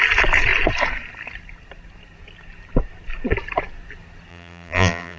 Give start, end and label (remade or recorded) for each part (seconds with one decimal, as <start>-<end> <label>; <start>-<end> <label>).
0.0-4.3 recorded; 4.3-5.2 remade